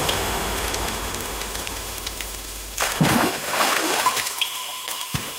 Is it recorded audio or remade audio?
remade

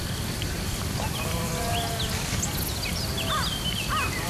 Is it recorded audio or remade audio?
recorded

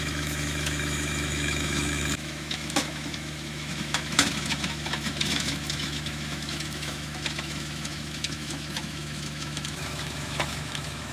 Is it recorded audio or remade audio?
remade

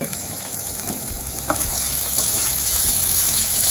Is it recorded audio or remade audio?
remade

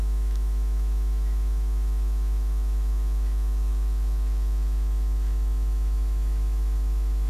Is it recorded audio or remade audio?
remade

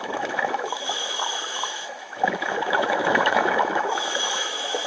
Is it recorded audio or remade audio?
remade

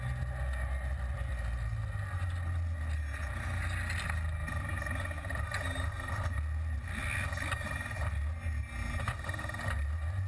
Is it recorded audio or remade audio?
recorded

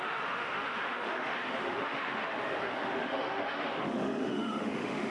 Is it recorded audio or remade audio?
remade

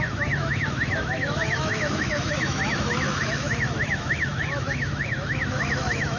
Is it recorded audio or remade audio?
remade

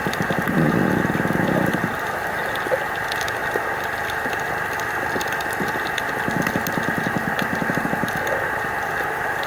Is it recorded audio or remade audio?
recorded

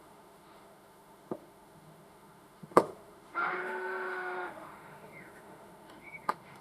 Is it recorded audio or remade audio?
remade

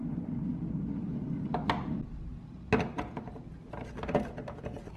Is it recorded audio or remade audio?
recorded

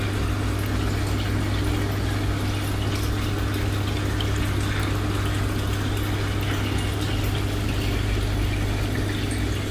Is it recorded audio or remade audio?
recorded